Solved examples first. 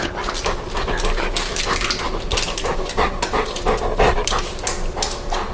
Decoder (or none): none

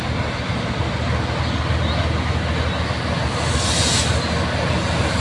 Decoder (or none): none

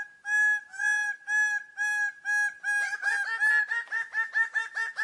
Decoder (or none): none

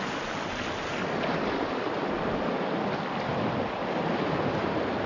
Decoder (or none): none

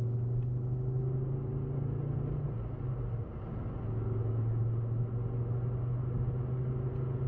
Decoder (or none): none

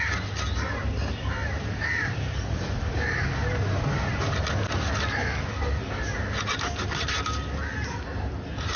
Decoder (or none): none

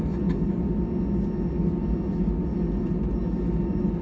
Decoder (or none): none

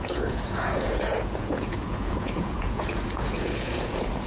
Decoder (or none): vocoder, Vocos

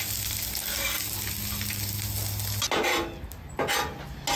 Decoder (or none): none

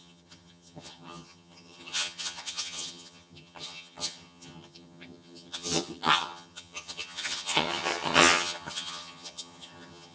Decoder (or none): vocoder, HiFi-GAN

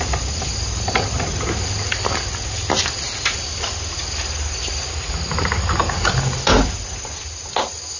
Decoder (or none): none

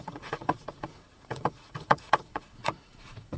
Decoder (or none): vocoder, Vocos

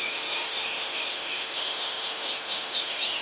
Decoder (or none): autoencoder, DAC-VAE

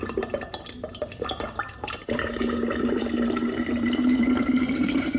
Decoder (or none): vocoder, BigVGAN v2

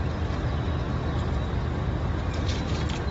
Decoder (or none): none